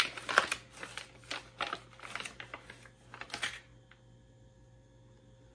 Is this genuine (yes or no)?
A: yes